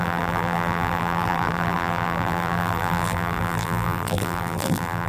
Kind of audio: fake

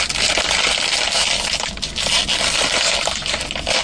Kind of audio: real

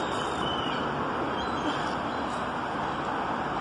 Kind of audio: real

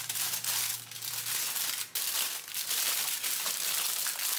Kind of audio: real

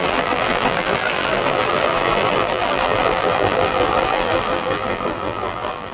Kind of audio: fake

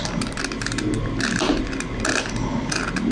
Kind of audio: real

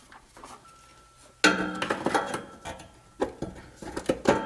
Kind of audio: real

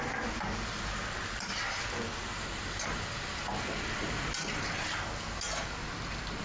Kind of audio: real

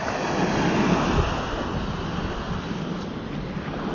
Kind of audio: real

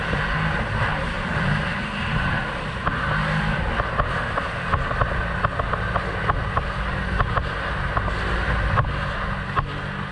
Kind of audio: real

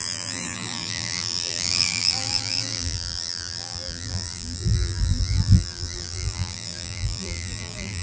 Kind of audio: fake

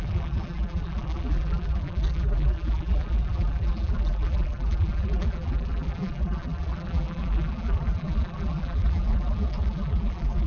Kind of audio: fake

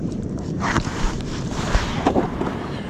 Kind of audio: fake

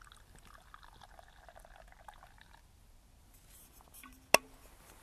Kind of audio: real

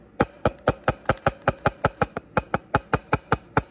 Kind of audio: real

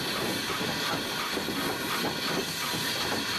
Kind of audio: real